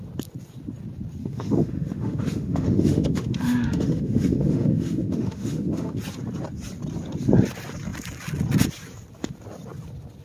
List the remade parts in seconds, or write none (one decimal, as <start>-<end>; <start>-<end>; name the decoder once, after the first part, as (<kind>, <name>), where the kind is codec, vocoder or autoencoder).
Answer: 1.2-6.0 (autoencoder, DAC-VAE)